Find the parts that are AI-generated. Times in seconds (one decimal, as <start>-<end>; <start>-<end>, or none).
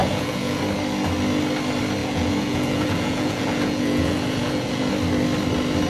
0.0-0.6; 2.0-4.9